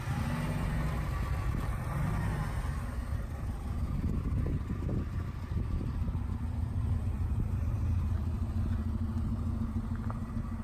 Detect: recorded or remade recorded